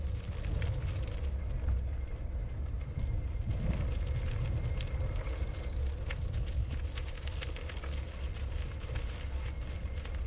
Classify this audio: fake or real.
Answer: real